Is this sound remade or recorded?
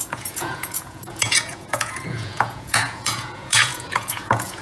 remade